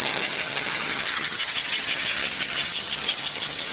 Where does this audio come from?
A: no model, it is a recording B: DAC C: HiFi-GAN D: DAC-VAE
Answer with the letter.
C